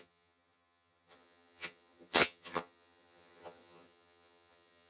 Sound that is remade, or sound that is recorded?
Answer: remade